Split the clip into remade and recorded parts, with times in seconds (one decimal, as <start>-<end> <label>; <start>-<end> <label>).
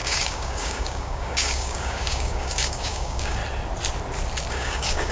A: 0.0-3.4 remade; 3.4-4.5 recorded; 4.5-5.1 remade